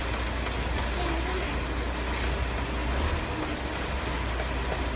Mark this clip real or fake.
real